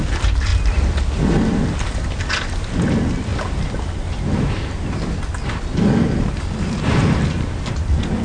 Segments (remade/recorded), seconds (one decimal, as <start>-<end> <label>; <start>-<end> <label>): 0.0-8.2 recorded